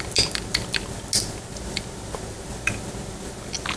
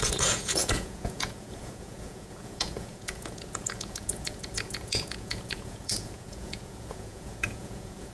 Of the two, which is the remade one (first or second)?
second